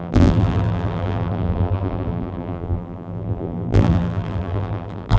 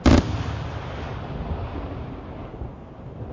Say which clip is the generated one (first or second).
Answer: first